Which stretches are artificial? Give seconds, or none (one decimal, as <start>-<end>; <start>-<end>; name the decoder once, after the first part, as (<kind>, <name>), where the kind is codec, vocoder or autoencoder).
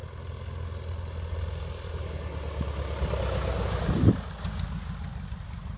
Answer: none